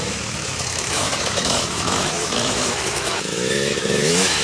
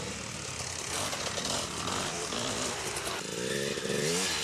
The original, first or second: second